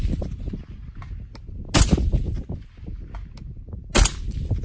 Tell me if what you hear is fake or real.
real